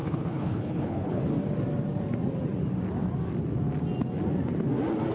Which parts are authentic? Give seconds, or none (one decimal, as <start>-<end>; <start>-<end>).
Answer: 1.2-5.1